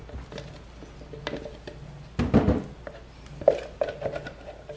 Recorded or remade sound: recorded